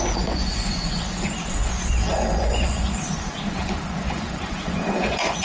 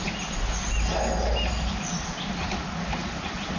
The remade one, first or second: first